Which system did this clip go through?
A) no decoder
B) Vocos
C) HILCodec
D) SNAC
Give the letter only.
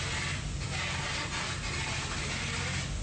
A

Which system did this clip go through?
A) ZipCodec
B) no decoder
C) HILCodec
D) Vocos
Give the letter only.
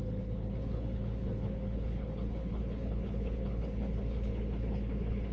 C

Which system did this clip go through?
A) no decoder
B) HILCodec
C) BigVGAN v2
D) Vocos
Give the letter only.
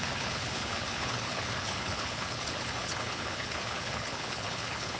B